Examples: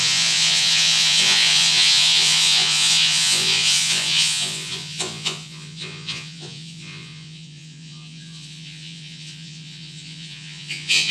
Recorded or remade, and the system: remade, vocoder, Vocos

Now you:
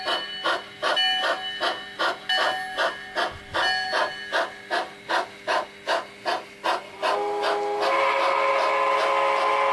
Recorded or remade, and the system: recorded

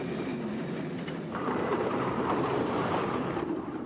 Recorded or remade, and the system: remade, vocoder, BigVGAN v2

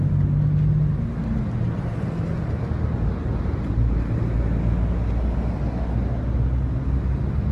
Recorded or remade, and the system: recorded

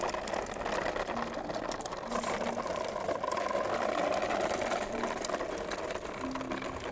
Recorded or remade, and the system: recorded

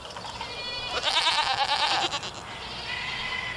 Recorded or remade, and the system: recorded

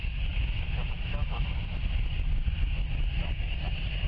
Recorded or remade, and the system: recorded